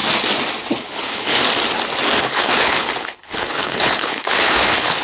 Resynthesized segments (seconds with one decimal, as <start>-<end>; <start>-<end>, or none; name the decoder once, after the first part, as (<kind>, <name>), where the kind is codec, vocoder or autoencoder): 0.7-1.5 (codec, HILCodec); 2.2-5.0